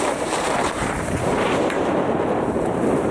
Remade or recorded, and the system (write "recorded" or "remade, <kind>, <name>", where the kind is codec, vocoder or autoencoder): remade, vocoder, BigVGAN v2